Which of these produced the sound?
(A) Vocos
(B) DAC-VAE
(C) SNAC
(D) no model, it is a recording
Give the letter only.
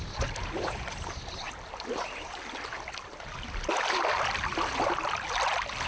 D